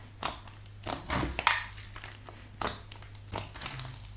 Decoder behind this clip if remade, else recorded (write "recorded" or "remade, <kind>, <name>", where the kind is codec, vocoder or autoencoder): recorded